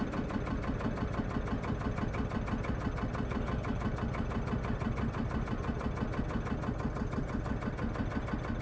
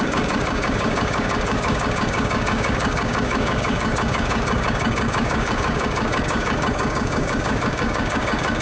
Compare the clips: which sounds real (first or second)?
first